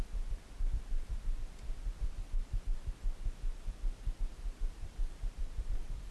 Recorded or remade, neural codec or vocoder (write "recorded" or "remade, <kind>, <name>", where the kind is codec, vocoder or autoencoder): remade, vocoder, BigVGAN v2